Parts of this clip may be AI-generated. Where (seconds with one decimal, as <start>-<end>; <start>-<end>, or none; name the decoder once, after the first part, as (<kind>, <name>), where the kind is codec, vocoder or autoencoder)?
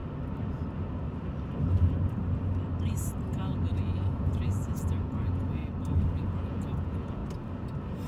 3.7-5.6 (vocoder, Vocos); 6.2-7.2